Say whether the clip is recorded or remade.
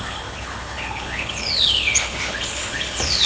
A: remade